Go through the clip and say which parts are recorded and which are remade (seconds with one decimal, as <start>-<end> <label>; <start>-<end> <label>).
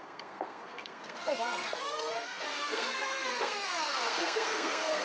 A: 0.0-5.0 remade